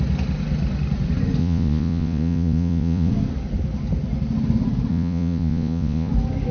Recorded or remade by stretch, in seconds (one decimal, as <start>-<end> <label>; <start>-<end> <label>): 0.0-1.4 recorded; 1.4-3.1 remade; 3.1-4.9 recorded; 4.9-6.1 remade; 6.1-6.5 recorded